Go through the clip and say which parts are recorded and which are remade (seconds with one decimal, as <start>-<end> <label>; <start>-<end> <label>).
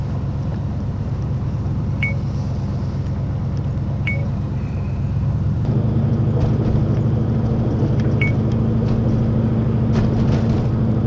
0.0-0.5 recorded; 0.5-1.9 remade; 1.9-4.2 recorded; 4.2-5.9 remade; 5.9-11.1 recorded